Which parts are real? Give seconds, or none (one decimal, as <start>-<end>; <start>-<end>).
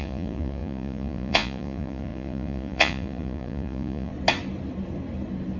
4.1-5.6